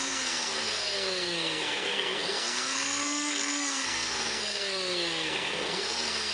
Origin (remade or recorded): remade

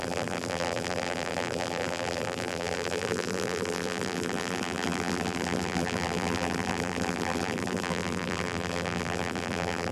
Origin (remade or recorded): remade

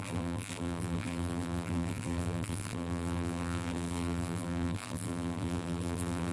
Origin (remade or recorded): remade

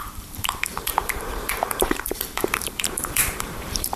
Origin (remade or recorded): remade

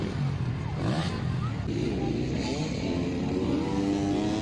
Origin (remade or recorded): recorded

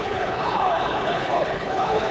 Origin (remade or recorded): remade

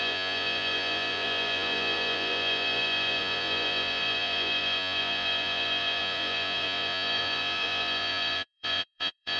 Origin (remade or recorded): remade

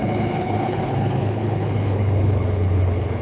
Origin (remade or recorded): remade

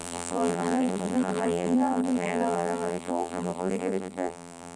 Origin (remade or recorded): remade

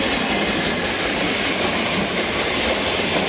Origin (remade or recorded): recorded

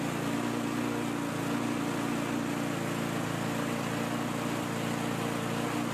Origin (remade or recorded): recorded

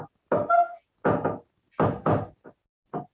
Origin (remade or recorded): recorded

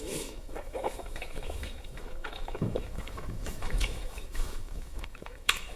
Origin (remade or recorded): remade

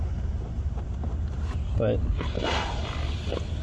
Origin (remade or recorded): recorded